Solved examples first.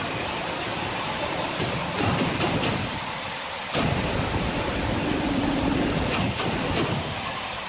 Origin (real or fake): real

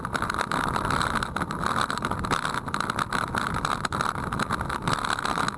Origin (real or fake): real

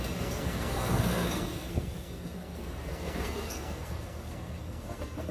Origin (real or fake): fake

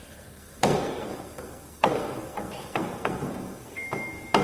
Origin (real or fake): fake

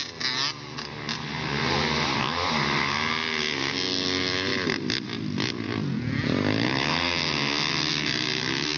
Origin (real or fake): real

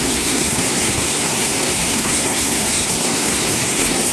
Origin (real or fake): fake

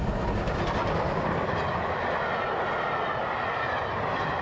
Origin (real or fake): real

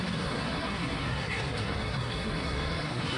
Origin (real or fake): fake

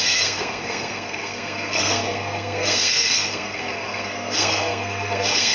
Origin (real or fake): fake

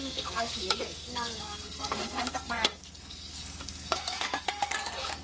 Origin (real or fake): fake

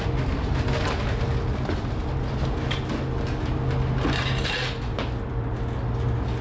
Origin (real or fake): real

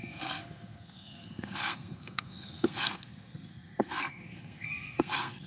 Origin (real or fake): fake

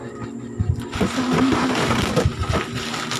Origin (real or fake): real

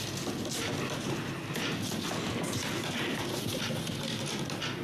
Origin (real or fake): real